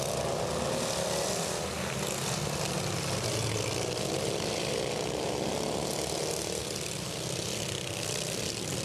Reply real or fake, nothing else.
real